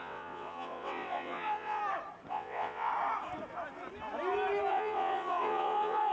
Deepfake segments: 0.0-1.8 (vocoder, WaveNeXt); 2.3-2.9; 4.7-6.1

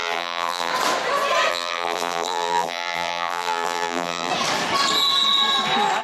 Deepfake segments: 0.0-0.7 (vocoder, BigVGAN v2); 1.5-4.3

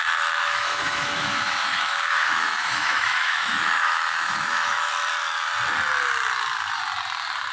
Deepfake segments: 0.4-4.9 (autoencoder, DAC-VAE)

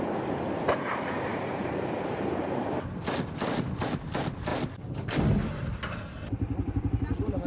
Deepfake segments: 1.3-2.9 (vocoder, BigVGAN v2)

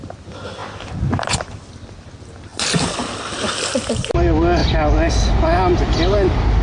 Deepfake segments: none